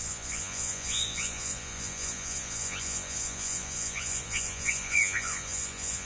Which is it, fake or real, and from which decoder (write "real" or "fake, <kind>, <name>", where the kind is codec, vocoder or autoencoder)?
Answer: fake, vocoder, Vocos